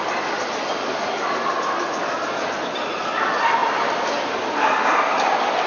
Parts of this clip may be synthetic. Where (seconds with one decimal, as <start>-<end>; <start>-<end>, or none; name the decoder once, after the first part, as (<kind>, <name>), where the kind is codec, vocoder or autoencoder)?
none